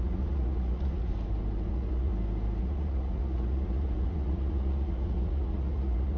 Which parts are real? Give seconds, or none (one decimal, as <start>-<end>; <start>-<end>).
1.1-1.7; 2.1-2.6